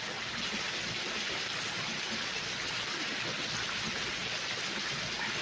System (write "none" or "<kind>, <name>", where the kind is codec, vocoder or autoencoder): none